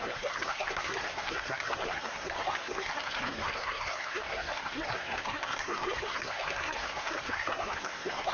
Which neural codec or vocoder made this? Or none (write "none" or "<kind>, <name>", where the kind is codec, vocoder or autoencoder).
codec, SNAC